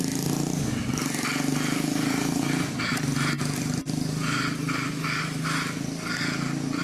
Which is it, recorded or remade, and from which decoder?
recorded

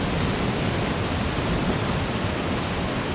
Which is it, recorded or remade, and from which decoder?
recorded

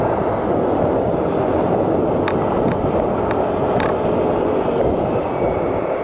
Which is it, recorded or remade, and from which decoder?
recorded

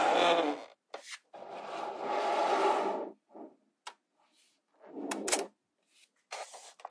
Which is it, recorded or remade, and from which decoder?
recorded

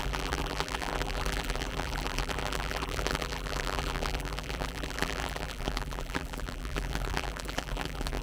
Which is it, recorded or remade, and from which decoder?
remade, vocoder, BigVGAN v2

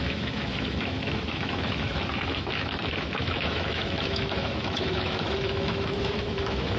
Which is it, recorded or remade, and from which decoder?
remade, autoencoder, DAC-VAE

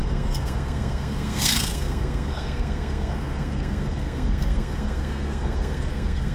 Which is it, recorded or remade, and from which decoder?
remade, codec, SNAC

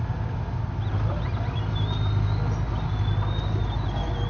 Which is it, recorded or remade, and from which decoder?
recorded